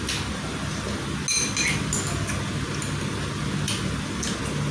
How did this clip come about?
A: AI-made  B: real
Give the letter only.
B